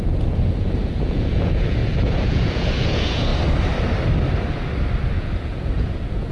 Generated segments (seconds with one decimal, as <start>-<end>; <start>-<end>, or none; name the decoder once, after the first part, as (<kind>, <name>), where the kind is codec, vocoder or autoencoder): 0.0-3.3 (vocoder, Vocos); 5.1-6.3